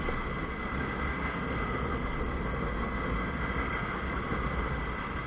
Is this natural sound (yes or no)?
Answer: yes